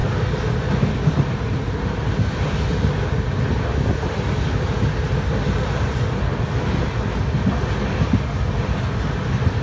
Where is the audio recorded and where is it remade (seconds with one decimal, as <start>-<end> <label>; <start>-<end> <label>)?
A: 0.0-9.6 recorded